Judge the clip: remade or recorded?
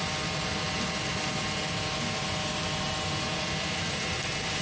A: recorded